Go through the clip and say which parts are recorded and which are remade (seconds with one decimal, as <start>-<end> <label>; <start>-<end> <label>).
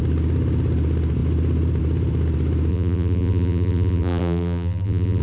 0.0-2.7 recorded; 2.7-5.2 remade